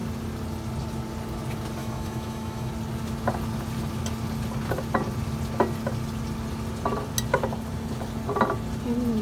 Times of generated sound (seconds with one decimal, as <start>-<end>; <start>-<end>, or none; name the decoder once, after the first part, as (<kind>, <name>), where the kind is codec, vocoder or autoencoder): 1.8-2.7 (autoencoder, DAC-VAE)